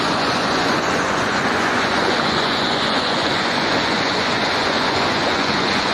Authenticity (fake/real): fake